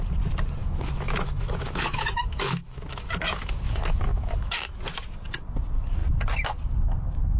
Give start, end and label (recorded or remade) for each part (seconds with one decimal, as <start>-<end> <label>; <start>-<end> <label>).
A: 0.0-0.6 recorded; 0.6-4.8 remade; 4.8-7.4 recorded